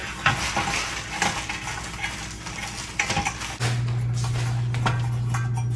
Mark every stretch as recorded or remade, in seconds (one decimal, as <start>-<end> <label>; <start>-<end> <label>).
0.0-5.8 recorded